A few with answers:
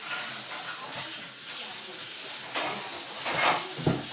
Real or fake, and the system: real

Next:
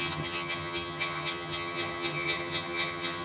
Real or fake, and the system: fake, vocoder, HiFi-GAN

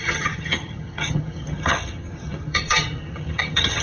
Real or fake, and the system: fake, vocoder, HiFi-GAN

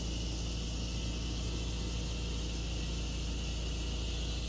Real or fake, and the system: real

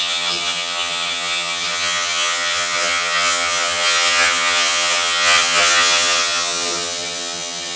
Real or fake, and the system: fake, vocoder, HiFi-GAN